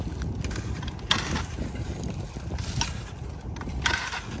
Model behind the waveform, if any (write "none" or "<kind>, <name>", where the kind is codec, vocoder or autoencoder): none